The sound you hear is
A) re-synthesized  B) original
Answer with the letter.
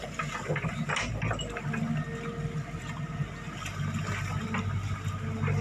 B